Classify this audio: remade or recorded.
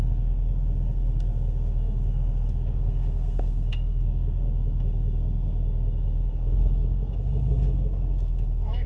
remade